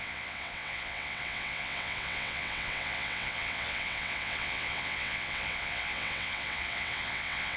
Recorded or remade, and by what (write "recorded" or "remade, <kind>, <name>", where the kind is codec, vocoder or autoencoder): remade, vocoder, WaveNeXt